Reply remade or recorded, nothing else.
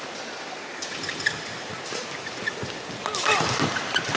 remade